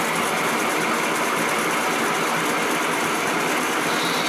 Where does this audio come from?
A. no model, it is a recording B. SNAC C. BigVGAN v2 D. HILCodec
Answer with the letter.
A